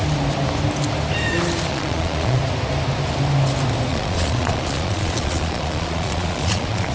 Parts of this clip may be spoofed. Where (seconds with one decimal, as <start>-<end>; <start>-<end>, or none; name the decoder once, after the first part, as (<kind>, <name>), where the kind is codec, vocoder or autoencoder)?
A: 1.7-2.4 (vocoder, Vocos); 3.9-6.9